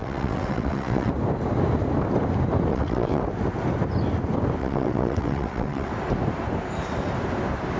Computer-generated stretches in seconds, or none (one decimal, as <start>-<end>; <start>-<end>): 0.0-1.1; 2.7-3.2; 4.6-5.9